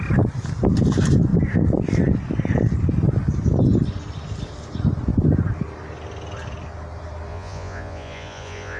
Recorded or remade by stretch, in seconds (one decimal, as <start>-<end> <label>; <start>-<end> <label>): 0.0-7.3 recorded; 7.3-8.8 remade